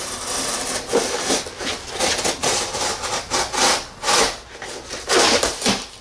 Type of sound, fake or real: real